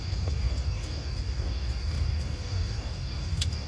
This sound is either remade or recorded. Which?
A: remade